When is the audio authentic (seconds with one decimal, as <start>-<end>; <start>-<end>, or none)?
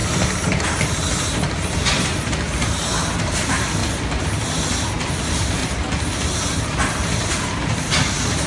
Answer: 0.0-2.3; 3.8-5.1; 5.6-7.6